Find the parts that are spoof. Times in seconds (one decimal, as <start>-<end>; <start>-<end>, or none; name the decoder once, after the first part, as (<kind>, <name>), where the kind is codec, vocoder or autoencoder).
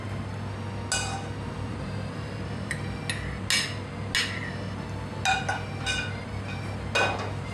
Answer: 1.4-3.0 (vocoder, BigVGAN v2)